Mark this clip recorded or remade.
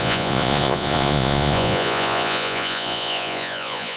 remade